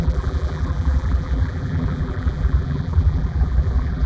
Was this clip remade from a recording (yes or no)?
yes